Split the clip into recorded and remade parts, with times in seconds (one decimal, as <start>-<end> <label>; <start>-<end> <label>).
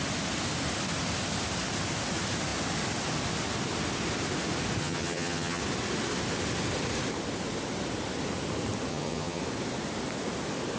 0.0-4.8 recorded; 4.8-5.6 remade; 5.6-8.9 recorded; 8.9-9.4 remade; 9.4-10.8 recorded